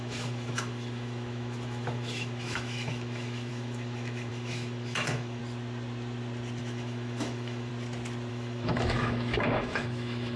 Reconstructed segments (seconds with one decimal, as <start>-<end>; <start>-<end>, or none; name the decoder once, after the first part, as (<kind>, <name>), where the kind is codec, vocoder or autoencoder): 0.0-5.4 (autoencoder, DAC-VAE); 6.6-7.7; 8.3-10.4